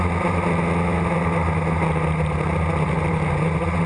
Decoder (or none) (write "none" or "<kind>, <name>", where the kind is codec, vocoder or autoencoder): none